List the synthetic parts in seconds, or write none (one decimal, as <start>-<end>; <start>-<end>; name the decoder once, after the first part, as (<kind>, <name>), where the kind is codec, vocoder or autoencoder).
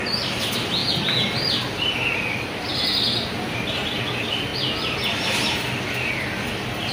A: none